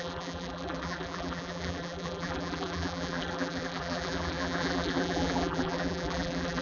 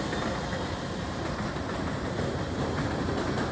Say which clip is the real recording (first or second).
second